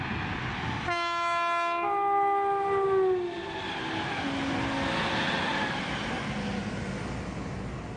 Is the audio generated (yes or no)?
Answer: no